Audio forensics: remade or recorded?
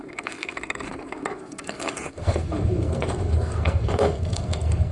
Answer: remade